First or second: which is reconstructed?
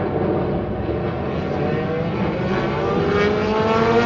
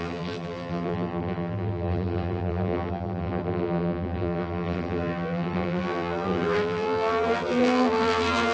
second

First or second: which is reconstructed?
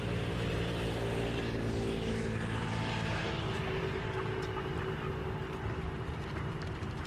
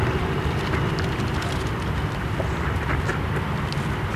second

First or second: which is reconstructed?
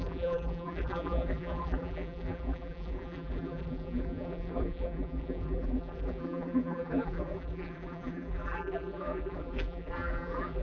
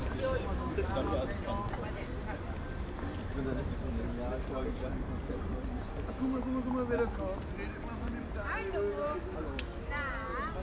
first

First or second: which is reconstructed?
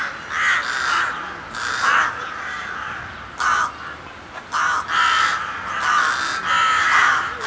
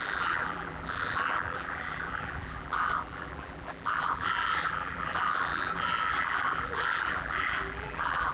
second